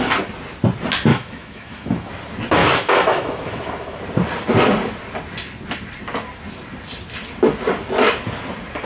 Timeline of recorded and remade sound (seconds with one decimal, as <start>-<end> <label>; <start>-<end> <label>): 0.0-1.1 recorded; 1.1-2.1 remade; 2.1-2.6 recorded; 2.6-4.0 remade; 4.0-8.9 recorded